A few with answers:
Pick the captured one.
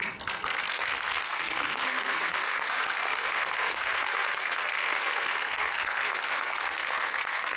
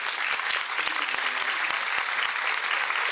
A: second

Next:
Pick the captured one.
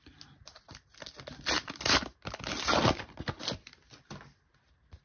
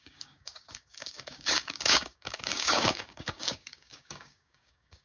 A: first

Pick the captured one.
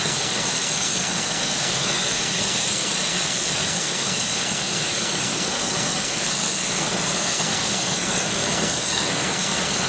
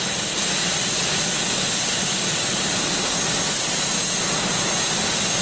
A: second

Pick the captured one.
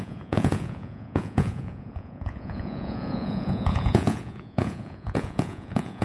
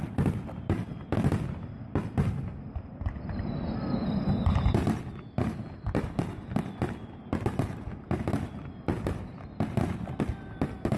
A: second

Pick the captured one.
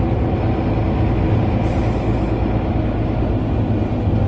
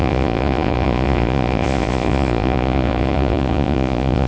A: first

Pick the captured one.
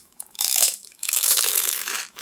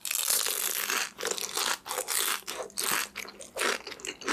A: second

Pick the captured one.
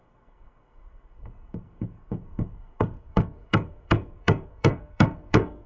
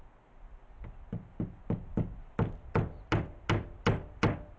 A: second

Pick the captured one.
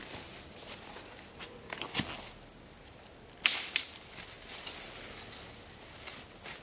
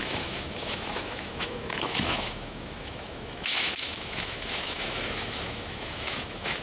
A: first